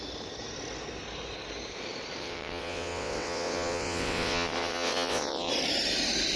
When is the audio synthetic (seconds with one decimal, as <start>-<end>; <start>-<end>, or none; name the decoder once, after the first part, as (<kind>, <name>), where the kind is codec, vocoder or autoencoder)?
2.2-5.5 (vocoder, WaveNeXt)